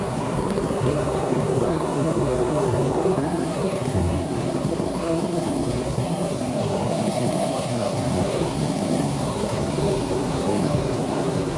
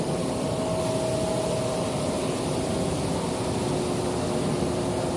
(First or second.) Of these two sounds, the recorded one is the second